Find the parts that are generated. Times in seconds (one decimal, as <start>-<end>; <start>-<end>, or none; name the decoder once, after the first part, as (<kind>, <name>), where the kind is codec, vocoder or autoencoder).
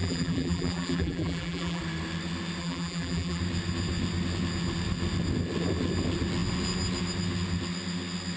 0.0-1.8 (vocoder, BigVGAN v2); 2.6-3.4